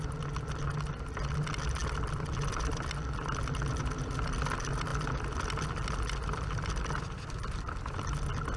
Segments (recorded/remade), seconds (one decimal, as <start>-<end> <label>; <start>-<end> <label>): 0.0-1.8 recorded; 1.8-2.6 remade; 2.6-8.6 recorded